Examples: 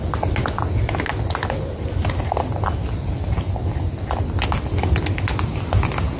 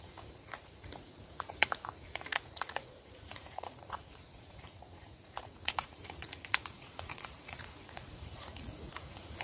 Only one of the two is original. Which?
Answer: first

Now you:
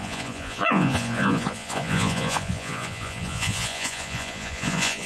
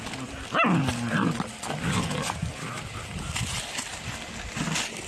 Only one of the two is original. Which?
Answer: second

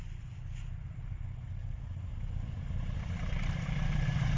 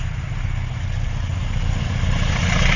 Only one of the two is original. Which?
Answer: second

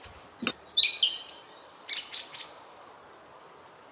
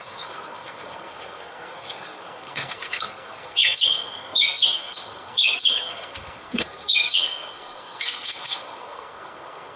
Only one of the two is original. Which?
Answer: first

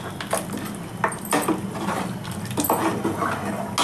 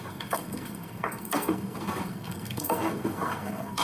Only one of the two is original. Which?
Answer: first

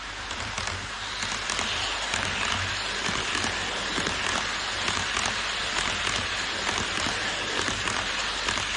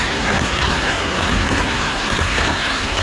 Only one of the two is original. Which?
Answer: first